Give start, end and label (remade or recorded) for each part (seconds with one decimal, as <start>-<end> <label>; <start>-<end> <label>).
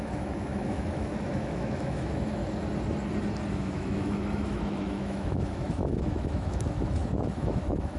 0.0-2.4 remade; 2.4-3.5 recorded; 3.5-8.0 remade